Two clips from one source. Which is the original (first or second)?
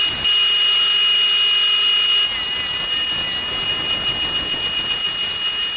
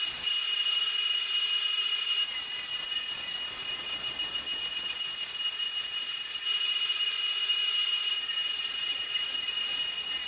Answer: first